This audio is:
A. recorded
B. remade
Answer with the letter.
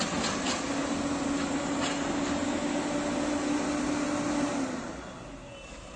A